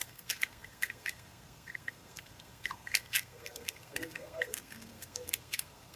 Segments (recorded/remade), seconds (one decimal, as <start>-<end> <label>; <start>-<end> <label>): 0.0-6.0 remade

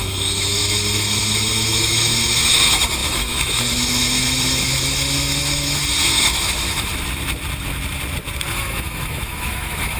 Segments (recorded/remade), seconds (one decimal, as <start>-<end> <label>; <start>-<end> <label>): 0.0-6.9 remade; 6.9-8.5 recorded; 8.5-10.0 remade

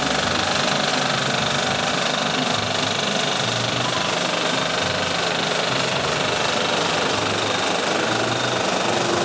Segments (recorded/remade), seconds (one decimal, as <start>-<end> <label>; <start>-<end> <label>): 0.0-9.2 recorded